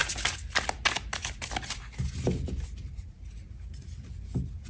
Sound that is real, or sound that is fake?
real